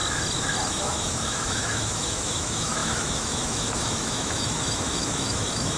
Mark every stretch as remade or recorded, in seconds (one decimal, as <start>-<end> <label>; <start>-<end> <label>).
0.0-0.7 recorded; 0.7-5.8 remade